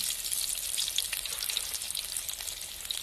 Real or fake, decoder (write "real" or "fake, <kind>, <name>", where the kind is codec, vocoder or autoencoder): real